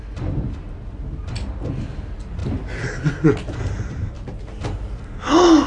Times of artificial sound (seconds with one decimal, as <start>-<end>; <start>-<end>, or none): none